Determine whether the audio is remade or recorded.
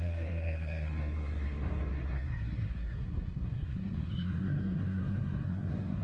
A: remade